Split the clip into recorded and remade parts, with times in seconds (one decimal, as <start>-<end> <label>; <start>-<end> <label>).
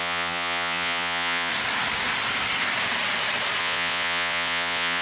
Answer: 0.0-1.5 remade; 1.5-3.6 recorded; 3.6-5.0 remade